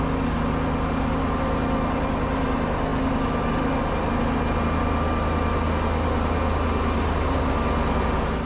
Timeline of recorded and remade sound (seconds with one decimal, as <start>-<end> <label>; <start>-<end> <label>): 0.0-8.5 recorded